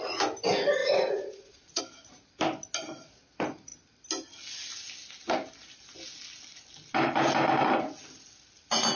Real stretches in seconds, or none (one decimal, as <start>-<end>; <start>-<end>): 0.0-0.8; 1.8-9.0